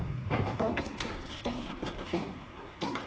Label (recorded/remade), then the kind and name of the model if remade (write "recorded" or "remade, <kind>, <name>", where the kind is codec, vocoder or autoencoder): remade, codec, SNAC